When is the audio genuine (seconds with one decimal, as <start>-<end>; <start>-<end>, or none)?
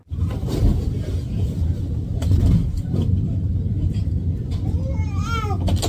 0.0-5.9